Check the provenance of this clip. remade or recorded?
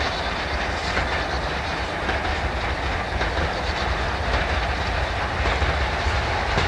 recorded